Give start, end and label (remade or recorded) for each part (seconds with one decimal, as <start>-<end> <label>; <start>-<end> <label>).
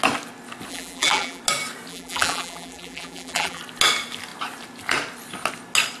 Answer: 0.0-0.7 recorded; 0.7-1.4 remade; 1.4-1.9 recorded; 1.9-3.6 remade; 3.6-6.0 recorded